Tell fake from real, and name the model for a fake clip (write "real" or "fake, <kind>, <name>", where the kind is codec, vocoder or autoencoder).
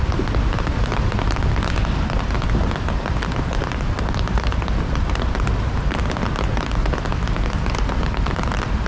real